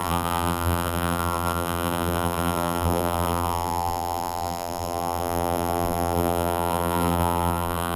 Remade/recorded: remade